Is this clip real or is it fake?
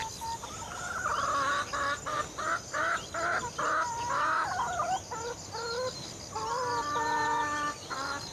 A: real